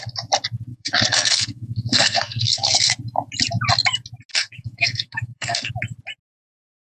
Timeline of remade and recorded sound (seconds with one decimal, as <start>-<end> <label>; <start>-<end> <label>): 0.0-0.7 recorded; 0.7-2.9 remade; 2.9-4.3 recorded; 4.3-5.7 remade; 5.7-6.8 recorded